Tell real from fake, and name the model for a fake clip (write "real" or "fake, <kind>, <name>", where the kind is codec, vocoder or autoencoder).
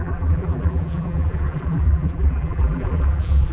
fake, vocoder, BigVGAN v2